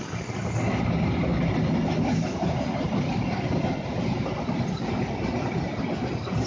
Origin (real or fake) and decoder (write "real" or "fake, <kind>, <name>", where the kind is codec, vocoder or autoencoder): real